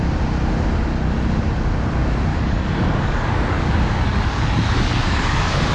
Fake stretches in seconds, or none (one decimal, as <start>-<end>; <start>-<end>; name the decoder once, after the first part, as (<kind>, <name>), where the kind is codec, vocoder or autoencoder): 2.3-5.7 (codec, DAC)